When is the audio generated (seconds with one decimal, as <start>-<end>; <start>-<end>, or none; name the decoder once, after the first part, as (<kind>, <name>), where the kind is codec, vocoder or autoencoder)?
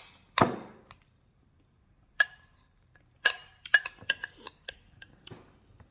0.0-3.1 (vocoder, BigVGAN v2)